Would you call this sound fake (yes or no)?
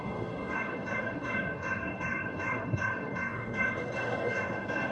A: yes